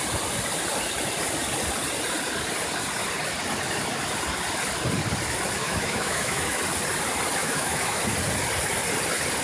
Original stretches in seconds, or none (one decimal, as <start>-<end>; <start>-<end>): 0.0-5.6; 6.6-7.4; 8.0-9.4